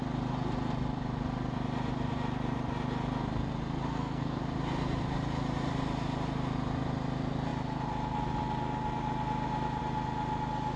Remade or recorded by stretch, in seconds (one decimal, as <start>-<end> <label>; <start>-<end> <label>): 0.0-3.9 recorded; 3.9-4.4 remade; 4.4-10.8 recorded